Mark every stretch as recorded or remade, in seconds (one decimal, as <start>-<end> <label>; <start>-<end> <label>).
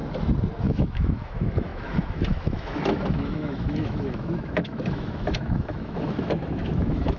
0.0-0.6 recorded; 0.6-7.2 remade